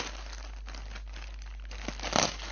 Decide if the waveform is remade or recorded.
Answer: recorded